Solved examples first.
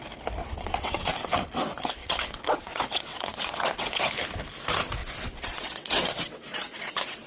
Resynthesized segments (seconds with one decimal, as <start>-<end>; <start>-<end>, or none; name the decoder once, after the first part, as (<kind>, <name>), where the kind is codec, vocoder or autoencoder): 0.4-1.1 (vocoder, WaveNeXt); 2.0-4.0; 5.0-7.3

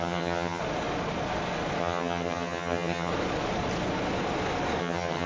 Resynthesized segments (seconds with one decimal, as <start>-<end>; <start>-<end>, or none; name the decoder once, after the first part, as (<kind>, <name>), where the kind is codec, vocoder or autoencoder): 0.0-0.6 (vocoder, HiFi-GAN); 1.8-3.1; 4.8-5.3

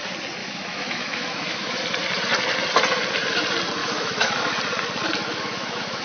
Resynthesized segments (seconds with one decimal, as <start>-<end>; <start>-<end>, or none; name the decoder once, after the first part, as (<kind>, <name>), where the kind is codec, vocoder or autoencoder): 0.4-1.8 (autoencoder, DAC-VAE); 3.8-4.4; 5.2-6.0